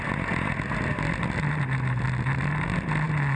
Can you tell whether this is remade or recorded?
recorded